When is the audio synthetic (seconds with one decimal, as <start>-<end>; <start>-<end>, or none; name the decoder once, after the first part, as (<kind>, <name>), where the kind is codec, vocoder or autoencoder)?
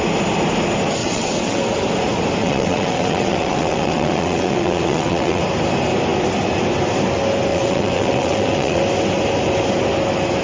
1.0-1.6 (vocoder, WaveNeXt); 2.4-5.4; 7.5-8.8